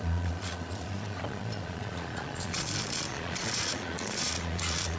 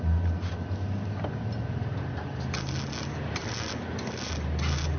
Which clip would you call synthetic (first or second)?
first